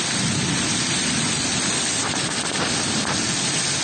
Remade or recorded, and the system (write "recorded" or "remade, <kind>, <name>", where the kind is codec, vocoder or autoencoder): recorded